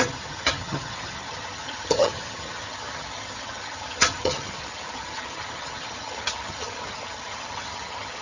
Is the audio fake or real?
fake